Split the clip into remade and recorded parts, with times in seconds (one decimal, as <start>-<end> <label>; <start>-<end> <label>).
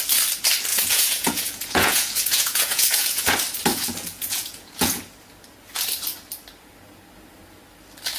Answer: 0.0-0.7 recorded; 0.7-3.3 remade; 3.3-3.7 recorded; 3.7-5.0 remade; 5.0-8.2 recorded